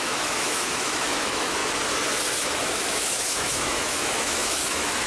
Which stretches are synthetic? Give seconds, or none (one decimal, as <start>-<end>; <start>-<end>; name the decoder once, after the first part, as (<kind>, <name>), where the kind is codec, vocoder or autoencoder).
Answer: 0.0-1.6 (autoencoder, DAC-VAE); 2.4-5.1